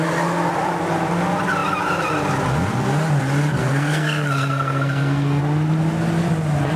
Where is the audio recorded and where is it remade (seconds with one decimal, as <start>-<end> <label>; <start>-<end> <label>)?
0.0-3.6 recorded; 3.6-5.4 remade; 5.4-6.8 recorded